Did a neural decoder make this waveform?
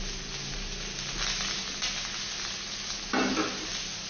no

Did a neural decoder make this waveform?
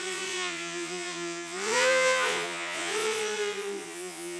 yes